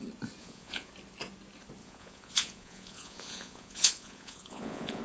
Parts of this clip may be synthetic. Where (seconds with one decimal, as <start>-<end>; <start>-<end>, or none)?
0.4-0.9; 1.8-5.0

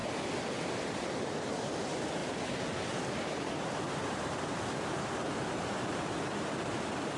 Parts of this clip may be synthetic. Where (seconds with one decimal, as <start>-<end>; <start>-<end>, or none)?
0.0-1.2; 2.2-6.4

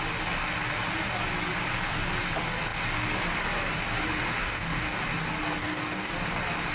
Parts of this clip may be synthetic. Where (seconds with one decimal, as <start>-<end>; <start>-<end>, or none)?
4.4-5.0; 5.6-6.1